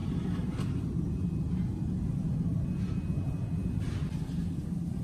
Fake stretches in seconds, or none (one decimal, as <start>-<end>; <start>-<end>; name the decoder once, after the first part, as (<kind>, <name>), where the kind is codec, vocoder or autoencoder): none